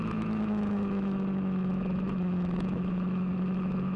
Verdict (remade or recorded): remade